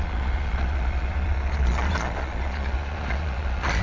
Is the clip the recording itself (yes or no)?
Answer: no